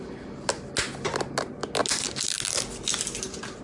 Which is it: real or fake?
real